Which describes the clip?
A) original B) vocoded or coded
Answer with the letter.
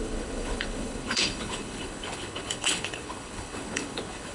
B